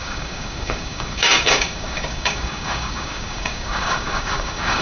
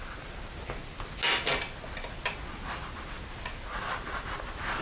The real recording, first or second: second